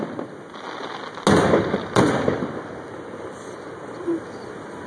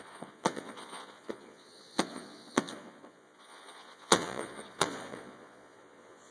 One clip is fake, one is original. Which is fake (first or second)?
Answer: second